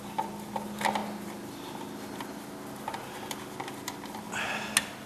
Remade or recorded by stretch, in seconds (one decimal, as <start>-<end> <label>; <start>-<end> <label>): 0.0-5.1 recorded